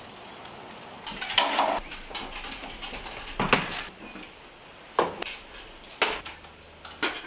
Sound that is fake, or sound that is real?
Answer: real